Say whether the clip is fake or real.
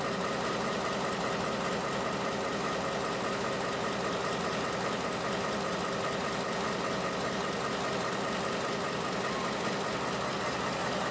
real